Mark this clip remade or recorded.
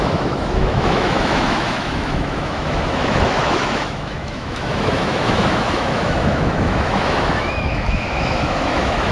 remade